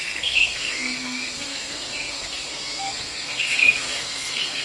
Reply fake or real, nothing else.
fake